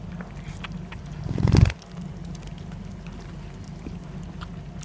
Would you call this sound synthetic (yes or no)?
no